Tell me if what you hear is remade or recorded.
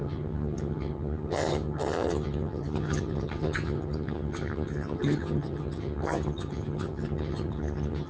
remade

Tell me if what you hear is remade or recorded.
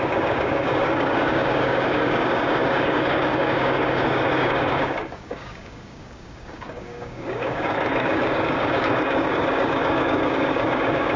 remade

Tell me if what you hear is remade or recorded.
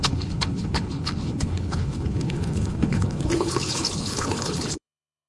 remade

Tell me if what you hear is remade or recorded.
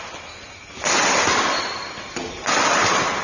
recorded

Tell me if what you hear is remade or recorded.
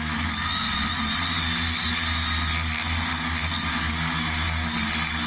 recorded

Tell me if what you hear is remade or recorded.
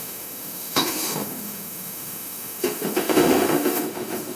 remade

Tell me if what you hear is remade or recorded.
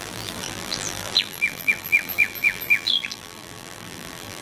remade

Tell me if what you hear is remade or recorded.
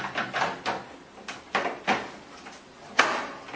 recorded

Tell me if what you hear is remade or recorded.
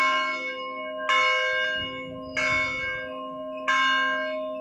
recorded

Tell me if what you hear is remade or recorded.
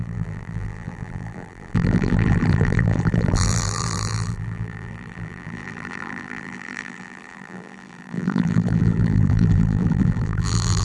remade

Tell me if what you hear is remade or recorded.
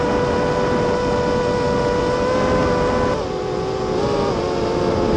recorded